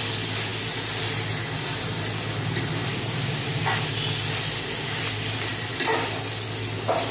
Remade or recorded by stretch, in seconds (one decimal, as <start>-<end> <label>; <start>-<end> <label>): 0.0-7.1 recorded